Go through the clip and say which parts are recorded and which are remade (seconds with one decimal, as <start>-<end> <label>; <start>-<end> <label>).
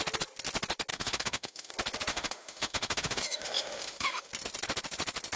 0.0-0.9 recorded; 0.9-1.7 remade; 1.7-2.1 recorded; 2.1-4.3 remade; 4.3-5.4 recorded